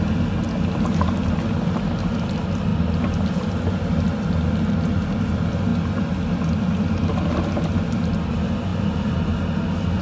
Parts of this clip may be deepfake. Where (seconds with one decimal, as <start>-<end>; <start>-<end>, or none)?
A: none